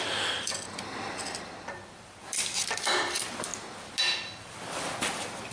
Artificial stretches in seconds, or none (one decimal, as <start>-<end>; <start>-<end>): 0.0-3.5; 4.2-5.5